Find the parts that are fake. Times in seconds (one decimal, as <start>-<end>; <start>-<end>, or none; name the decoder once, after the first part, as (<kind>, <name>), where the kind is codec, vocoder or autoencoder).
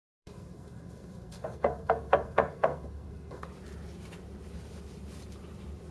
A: 0.0-3.5 (codec, SNAC)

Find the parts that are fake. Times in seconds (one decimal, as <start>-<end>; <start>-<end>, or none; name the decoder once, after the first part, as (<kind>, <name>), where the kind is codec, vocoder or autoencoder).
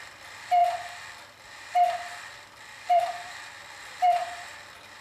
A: 0.0-5.0 (vocoder, BigVGAN v2)